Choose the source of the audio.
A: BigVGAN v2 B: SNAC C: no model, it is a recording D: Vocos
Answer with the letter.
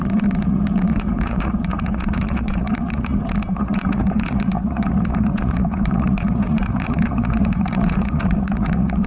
D